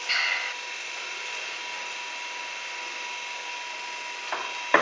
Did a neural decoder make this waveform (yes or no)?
no